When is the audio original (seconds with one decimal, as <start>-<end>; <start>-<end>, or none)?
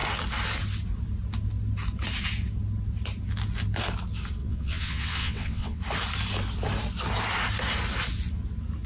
0.0-4.4; 5.8-8.9